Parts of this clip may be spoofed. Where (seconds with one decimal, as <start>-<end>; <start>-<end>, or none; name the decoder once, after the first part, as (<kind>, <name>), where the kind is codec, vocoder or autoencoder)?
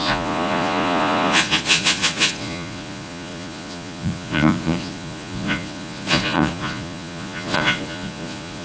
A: 0.0-8.6 (vocoder, Vocos)